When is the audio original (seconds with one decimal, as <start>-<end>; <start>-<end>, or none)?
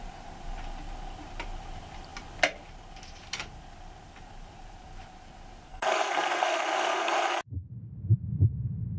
0.0-5.7; 7.2-9.0